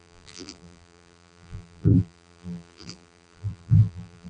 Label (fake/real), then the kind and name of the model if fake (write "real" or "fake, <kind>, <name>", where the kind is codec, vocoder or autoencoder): fake, vocoder, BigVGAN v2